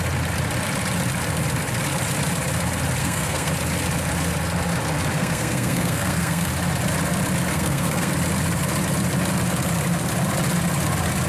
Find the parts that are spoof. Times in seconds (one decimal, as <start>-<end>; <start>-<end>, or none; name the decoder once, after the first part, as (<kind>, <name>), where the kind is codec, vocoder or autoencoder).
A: 3.0-3.5 (codec, SNAC); 5.1-6.5; 7.5-8.1